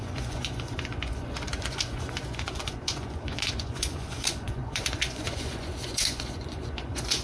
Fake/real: fake